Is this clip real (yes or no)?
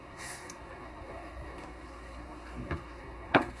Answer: no